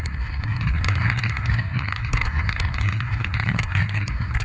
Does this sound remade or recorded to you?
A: remade